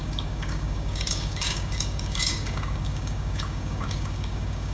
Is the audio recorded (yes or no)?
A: no